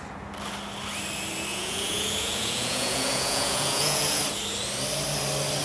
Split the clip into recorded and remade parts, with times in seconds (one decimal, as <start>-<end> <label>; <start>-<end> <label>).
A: 0.0-1.5 recorded; 1.5-4.2 remade; 4.2-5.6 recorded